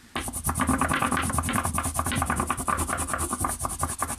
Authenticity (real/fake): real